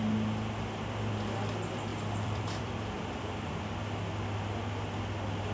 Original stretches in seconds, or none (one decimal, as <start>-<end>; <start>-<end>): 0.0-1.9; 3.6-5.5